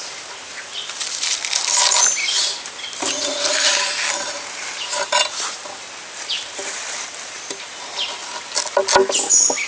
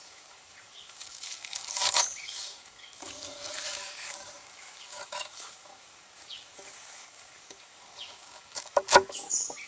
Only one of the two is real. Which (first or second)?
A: first